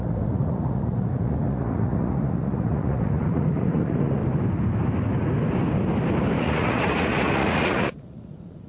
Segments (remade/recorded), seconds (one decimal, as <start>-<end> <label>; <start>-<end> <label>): 0.0-4.2 remade; 4.2-6.4 recorded; 6.4-8.7 remade